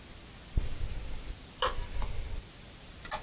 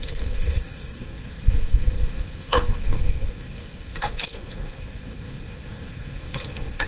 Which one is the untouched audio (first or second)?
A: first